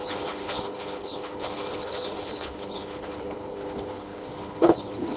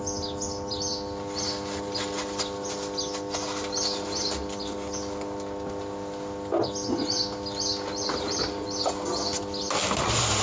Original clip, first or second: second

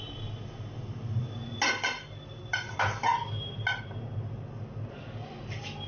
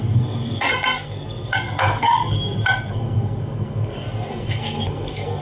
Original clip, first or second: first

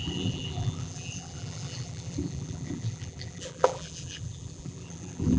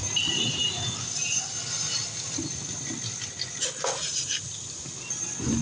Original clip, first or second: second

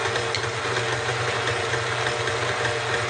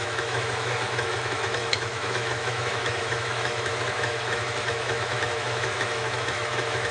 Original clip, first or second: first